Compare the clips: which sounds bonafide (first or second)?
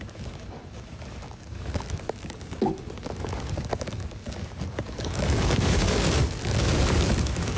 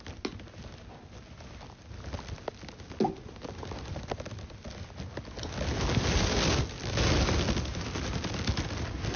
second